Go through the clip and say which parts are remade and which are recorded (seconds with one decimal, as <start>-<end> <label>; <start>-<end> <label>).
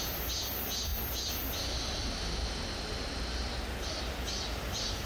0.0-5.1 recorded